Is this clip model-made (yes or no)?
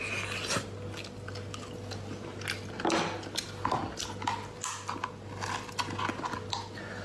no